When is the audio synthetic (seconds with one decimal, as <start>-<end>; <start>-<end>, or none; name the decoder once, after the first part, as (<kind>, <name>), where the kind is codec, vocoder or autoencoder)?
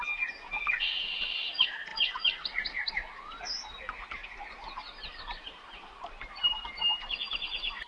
4.2-5.7 (vocoder, BigVGAN v2)